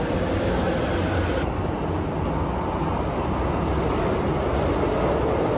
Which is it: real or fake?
real